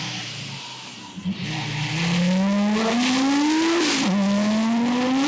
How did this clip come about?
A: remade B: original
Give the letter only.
B